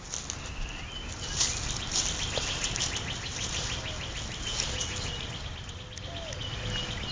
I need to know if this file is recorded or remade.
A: recorded